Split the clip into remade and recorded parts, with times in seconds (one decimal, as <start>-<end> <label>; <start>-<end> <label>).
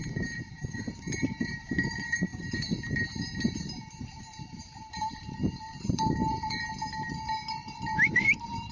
0.0-8.7 remade